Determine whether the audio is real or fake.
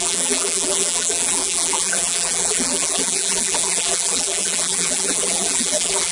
fake